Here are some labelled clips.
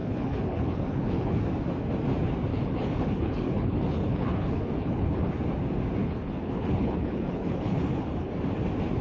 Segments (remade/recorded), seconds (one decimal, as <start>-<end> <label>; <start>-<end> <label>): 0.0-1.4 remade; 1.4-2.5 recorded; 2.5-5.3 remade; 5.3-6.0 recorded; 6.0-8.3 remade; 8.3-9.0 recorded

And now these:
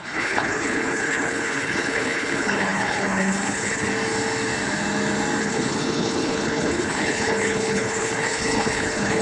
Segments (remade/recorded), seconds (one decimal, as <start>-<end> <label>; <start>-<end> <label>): 0.0-3.9 remade; 3.9-5.4 recorded; 5.4-9.2 remade

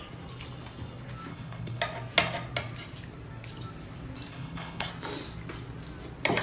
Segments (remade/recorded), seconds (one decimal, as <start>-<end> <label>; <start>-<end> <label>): 0.0-1.3 recorded; 1.3-1.8 remade; 1.8-4.3 recorded; 4.3-4.9 remade; 4.9-6.4 recorded

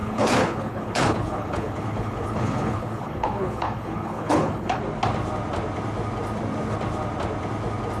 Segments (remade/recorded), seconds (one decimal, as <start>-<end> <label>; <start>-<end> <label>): 0.0-4.8 remade; 4.8-8.0 recorded

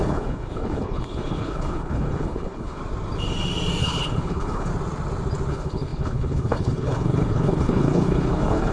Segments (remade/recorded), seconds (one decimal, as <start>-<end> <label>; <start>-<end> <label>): 0.0-2.8 remade; 2.8-3.8 recorded; 3.8-4.7 remade; 4.7-5.5 recorded; 5.5-8.7 remade

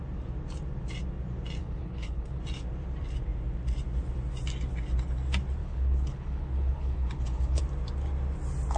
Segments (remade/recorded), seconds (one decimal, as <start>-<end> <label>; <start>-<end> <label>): 0.0-1.6 recorded; 1.6-2.4 remade; 2.4-5.6 recorded; 5.6-7.6 remade; 7.6-8.8 recorded

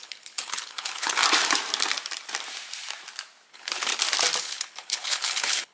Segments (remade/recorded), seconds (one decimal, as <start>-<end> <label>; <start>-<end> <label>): 0.0-1.2 remade; 1.2-3.5 recorded; 3.5-3.9 remade; 3.9-4.4 recorded; 4.4-5.7 remade